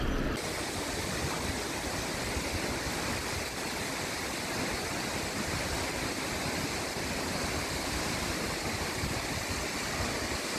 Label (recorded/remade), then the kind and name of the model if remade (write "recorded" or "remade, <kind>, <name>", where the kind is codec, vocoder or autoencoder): recorded